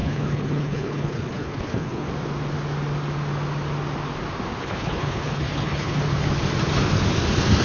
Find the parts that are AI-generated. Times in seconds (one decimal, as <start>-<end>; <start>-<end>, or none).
0.0-2.1; 4.6-6.0